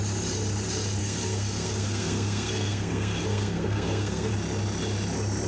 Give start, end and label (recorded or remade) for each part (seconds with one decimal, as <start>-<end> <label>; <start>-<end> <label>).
0.0-1.0 recorded; 1.0-4.3 remade; 4.3-5.5 recorded